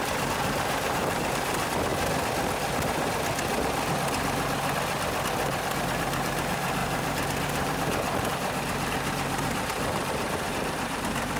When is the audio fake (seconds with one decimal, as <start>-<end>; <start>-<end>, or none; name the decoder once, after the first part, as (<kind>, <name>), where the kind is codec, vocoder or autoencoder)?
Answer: 0.0-1.9 (vocoder, BigVGAN v2); 5.9-11.4